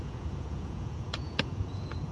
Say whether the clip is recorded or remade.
remade